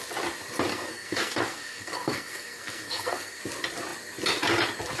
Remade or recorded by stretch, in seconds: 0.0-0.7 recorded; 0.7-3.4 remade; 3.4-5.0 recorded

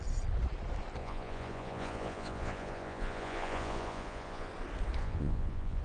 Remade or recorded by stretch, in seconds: 0.0-1.0 recorded; 1.0-4.5 remade; 4.5-5.0 recorded; 5.0-5.8 remade